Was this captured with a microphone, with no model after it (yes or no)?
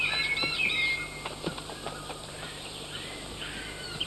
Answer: no